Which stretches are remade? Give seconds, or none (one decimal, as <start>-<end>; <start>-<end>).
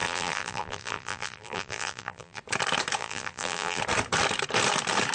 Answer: 0.0-2.4; 3.0-3.8